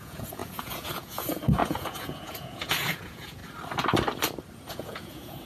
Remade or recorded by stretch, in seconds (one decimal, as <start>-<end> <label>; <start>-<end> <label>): 0.0-3.4 remade; 3.4-4.7 recorded; 4.7-5.5 remade